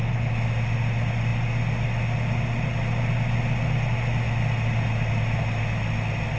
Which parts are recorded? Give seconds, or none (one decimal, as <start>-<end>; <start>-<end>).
0.0-6.4